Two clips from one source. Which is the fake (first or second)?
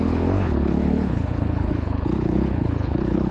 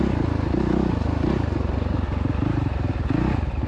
first